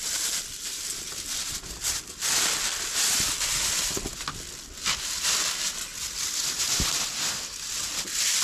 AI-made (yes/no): no